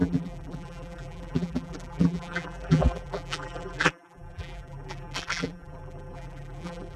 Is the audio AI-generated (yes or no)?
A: yes